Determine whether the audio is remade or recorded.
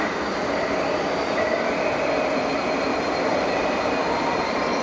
remade